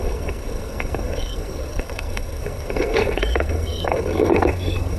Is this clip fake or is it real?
fake